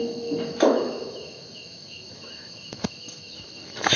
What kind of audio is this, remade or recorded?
remade